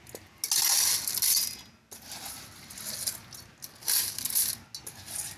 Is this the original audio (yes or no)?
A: yes